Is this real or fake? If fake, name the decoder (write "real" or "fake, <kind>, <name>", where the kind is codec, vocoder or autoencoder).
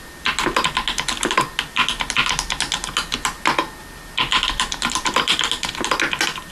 real